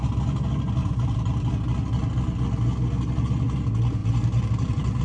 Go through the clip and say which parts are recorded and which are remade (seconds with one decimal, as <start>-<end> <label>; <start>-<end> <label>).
0.0-0.8 recorded; 0.8-1.5 remade; 1.5-4.0 recorded; 4.0-5.0 remade